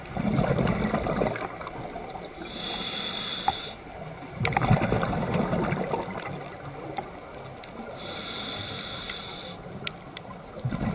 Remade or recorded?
recorded